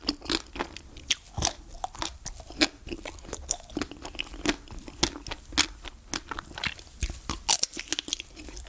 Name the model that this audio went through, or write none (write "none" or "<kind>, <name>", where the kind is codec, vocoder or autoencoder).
none